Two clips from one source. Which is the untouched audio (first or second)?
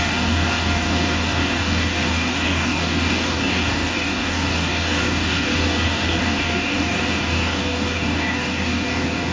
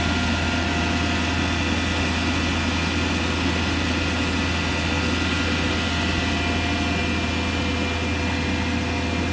second